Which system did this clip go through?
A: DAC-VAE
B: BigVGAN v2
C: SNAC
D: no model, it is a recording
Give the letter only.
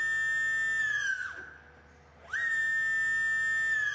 D